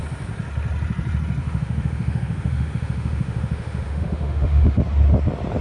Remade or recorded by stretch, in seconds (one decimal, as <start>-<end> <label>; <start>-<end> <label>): 0.0-1.4 recorded; 1.4-4.8 remade; 4.8-5.6 recorded